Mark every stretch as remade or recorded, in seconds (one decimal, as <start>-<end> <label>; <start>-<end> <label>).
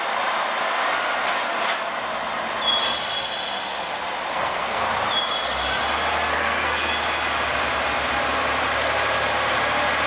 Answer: 0.0-4.3 recorded; 4.3-4.9 remade; 4.9-6.3 recorded; 6.3-6.9 remade; 6.9-10.1 recorded